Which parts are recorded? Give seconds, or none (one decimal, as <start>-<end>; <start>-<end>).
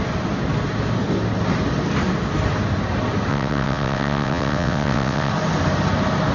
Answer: 0.0-3.3; 5.3-6.3